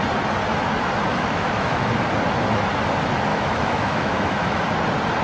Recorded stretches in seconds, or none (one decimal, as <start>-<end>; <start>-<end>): 0.0-1.1; 1.9-3.3; 4.6-5.2